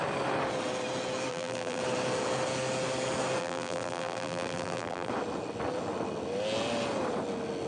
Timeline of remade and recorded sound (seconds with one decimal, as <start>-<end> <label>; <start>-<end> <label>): 0.0-1.3 recorded; 1.3-1.8 remade; 1.8-3.4 recorded; 3.4-5.1 remade; 5.1-7.7 recorded